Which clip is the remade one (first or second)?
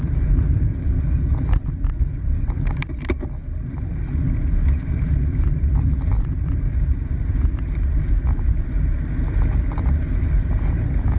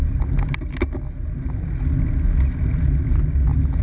first